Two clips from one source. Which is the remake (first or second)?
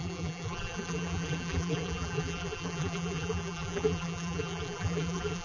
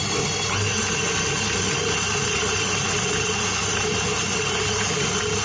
first